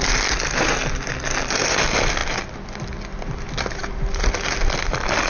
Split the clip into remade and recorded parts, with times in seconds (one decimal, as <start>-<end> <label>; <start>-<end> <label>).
0.0-5.3 recorded